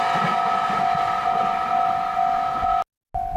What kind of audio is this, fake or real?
real